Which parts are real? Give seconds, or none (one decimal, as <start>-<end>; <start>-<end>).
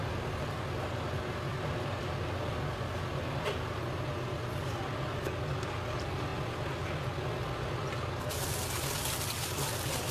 0.0-10.1